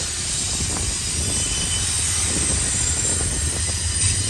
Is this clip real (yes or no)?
yes